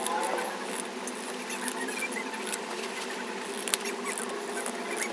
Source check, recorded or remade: recorded